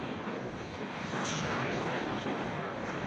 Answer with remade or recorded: remade